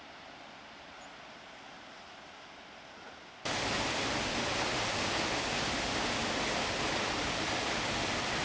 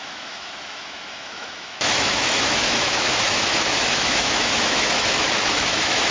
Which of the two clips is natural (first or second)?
first